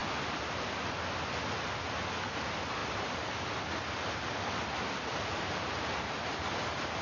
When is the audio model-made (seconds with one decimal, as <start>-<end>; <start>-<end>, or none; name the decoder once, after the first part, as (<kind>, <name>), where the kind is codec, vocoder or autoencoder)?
none